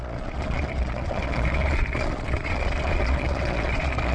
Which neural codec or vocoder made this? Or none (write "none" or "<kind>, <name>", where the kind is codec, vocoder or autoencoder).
vocoder, Vocos